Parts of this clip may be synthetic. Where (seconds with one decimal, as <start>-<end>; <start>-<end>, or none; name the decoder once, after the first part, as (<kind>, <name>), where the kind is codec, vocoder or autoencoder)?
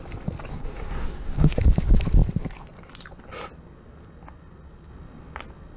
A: 0.5-1.6 (codec, SNAC)